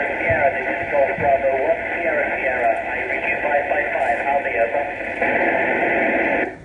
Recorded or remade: recorded